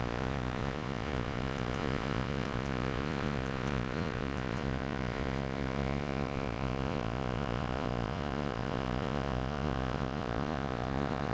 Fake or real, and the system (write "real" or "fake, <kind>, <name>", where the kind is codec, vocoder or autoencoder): fake, vocoder, Vocos